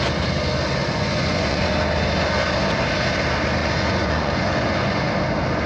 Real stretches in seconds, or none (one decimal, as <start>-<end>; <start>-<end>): 0.0-0.8; 1.7-3.6; 5.0-5.7